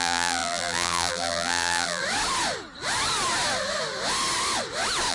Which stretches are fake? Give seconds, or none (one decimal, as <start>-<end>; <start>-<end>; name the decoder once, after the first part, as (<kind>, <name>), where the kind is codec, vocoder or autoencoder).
0.0-2.0 (vocoder, BigVGAN v2)